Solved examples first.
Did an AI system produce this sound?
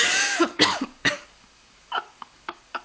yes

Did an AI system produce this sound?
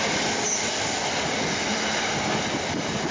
no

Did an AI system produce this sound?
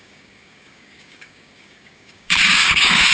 yes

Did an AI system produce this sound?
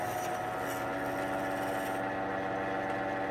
no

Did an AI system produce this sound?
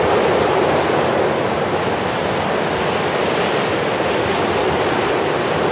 no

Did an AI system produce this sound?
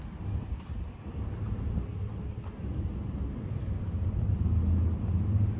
no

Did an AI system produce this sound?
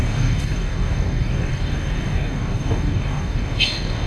yes